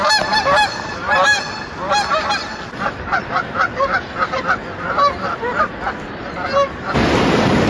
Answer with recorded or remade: recorded